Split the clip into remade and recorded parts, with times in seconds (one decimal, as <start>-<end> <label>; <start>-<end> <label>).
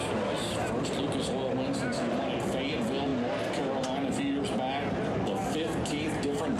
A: 0.0-6.6 recorded